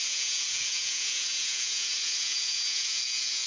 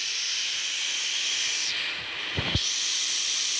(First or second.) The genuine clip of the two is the second